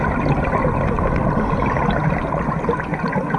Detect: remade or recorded recorded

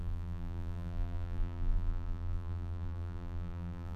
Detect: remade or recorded remade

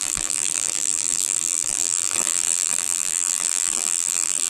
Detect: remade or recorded remade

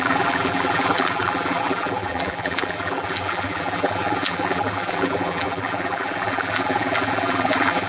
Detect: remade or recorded remade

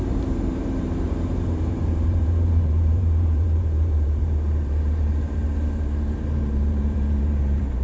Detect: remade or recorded remade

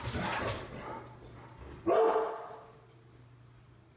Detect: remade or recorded recorded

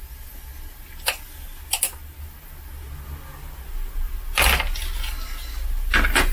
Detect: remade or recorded recorded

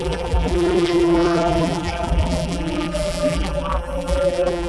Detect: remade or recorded remade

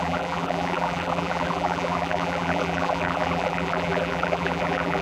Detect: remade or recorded remade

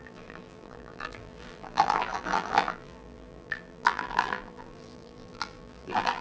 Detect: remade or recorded remade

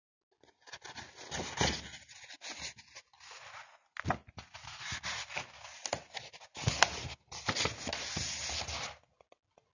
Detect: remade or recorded recorded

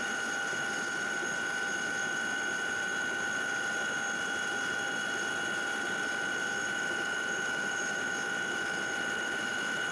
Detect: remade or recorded recorded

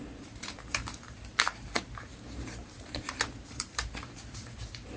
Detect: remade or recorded remade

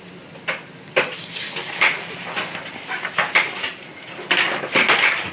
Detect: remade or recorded recorded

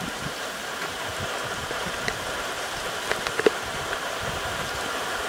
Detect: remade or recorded remade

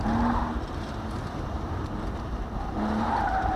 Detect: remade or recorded remade